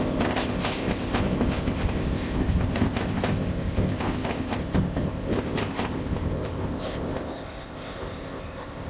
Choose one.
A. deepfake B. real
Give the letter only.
A